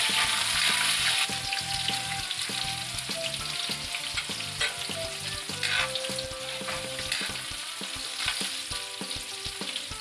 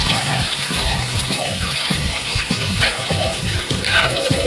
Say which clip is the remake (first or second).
second